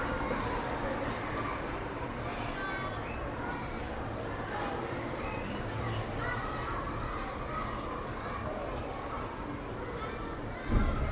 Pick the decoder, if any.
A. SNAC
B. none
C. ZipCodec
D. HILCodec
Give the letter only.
B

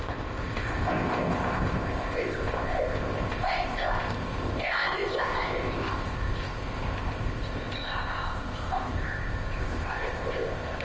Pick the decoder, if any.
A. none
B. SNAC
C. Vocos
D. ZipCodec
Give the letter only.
D